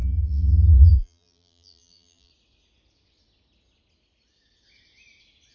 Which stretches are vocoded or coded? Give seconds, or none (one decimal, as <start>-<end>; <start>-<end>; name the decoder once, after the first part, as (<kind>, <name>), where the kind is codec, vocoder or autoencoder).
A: 0.0-2.3 (vocoder, BigVGAN v2)